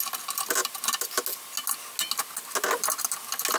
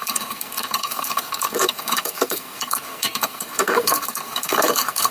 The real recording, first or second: first